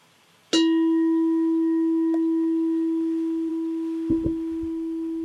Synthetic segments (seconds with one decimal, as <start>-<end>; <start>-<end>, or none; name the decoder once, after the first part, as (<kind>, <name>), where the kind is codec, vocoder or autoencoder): none